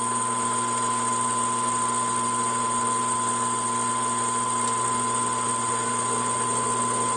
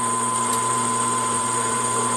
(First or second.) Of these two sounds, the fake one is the second